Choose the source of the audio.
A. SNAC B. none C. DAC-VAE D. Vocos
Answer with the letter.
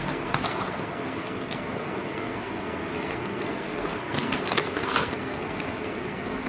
A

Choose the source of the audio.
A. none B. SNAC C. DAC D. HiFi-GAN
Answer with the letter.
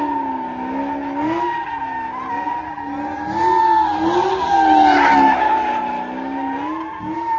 A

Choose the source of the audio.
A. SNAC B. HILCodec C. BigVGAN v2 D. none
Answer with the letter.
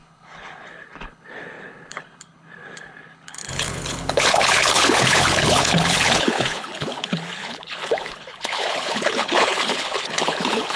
B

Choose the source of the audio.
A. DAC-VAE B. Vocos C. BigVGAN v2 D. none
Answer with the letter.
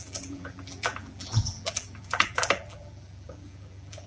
C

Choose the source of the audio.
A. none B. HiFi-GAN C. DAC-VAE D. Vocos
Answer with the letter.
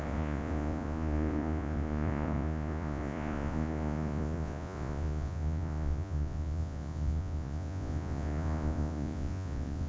D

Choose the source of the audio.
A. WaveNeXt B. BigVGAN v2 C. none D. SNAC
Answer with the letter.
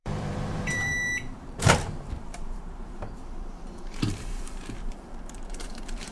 B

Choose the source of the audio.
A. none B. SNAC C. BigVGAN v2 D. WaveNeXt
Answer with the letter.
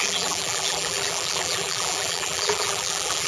C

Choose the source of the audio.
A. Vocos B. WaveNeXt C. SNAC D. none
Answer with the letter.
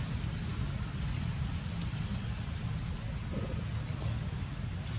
D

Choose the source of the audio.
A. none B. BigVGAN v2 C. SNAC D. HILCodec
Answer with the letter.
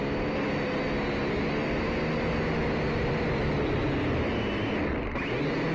A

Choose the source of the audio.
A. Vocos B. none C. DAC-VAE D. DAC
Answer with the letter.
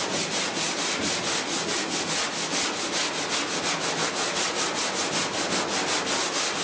B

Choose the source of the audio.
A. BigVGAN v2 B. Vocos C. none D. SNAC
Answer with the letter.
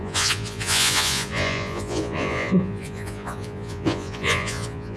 B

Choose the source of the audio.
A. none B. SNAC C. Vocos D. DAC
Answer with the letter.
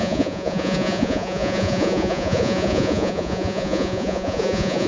C